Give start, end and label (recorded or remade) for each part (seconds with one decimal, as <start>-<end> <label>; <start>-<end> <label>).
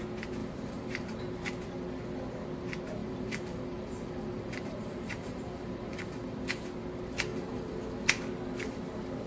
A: 0.0-0.4 recorded; 0.4-1.2 remade; 1.2-3.0 recorded; 3.0-6.4 remade; 6.4-7.3 recorded; 7.3-7.8 remade; 7.8-9.3 recorded